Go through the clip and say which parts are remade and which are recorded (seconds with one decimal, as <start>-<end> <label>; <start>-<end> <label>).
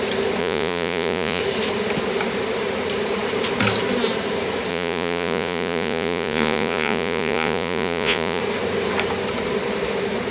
0.0-0.4 recorded; 0.4-1.4 remade; 1.4-4.7 recorded; 4.7-8.4 remade; 8.4-10.3 recorded